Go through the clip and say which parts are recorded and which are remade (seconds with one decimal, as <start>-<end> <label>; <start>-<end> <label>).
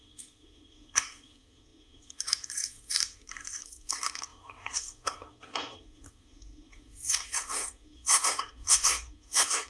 0.0-9.7 remade